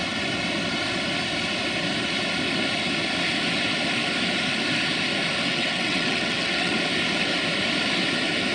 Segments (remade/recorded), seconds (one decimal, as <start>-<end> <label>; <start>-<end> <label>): 0.0-5.5 recorded; 5.5-6.7 remade; 6.7-8.5 recorded